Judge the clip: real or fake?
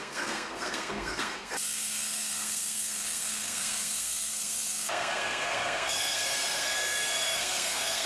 fake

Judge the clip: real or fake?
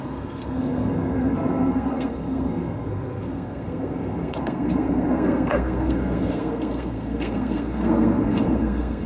fake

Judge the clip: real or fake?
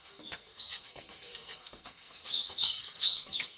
fake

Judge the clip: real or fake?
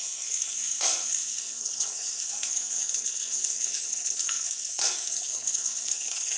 fake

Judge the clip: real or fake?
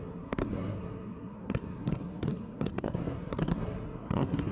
fake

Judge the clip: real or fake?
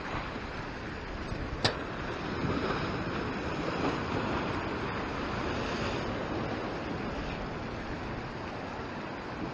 real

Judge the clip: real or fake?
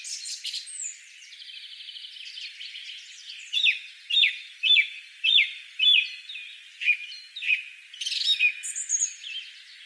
real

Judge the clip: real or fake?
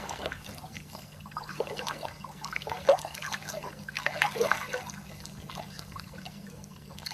fake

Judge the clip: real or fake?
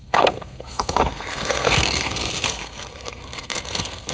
fake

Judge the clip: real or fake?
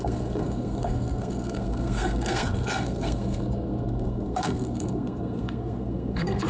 fake